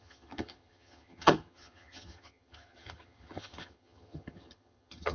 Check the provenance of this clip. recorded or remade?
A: remade